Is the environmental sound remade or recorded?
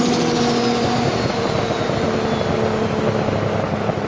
recorded